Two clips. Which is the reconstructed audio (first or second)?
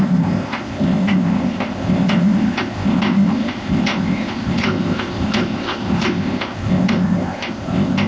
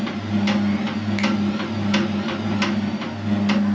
first